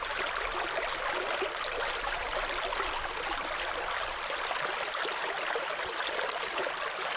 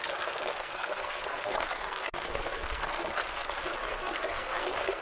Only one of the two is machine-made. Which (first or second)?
second